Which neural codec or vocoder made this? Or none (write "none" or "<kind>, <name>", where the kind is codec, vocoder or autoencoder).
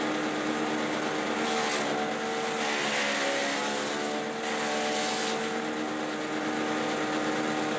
none